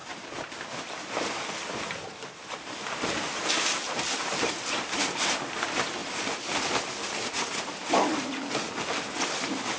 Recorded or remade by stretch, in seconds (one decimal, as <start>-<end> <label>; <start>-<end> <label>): 0.0-9.8 recorded